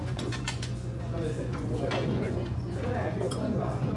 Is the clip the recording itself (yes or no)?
no